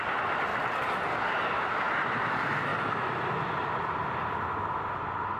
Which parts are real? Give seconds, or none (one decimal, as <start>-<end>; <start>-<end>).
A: 0.0-5.4